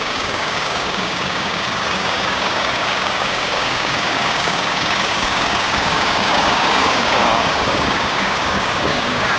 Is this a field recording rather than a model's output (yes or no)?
no